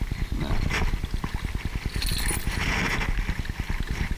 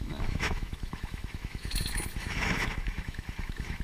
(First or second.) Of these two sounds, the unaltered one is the first